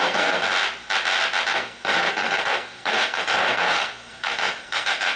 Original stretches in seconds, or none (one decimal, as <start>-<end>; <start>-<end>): 0.5-1.5